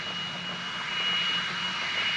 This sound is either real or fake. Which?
real